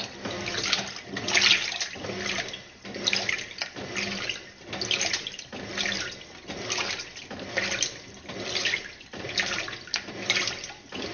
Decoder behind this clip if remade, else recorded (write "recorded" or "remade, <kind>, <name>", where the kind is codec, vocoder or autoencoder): recorded